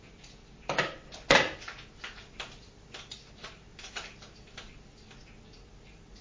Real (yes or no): yes